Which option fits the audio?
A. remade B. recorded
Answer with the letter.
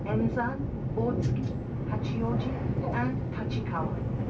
B